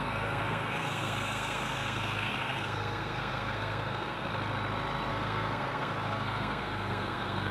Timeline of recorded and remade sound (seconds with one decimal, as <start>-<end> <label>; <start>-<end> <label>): 0.0-4.3 remade; 4.3-5.1 recorded; 5.1-7.5 remade